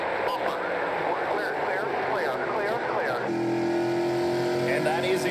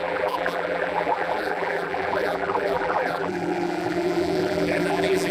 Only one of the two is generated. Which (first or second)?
second